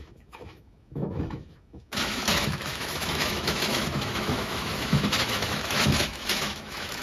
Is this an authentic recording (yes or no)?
no